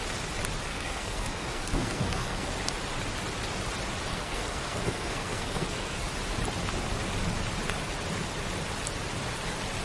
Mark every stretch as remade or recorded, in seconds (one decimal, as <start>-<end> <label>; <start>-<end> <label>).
0.0-0.7 recorded; 0.7-2.5 remade; 2.5-4.1 recorded; 4.1-6.0 remade; 6.0-9.8 recorded